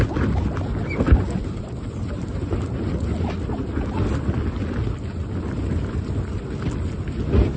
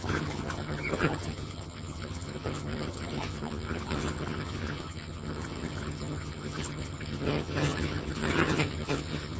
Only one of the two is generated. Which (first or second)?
second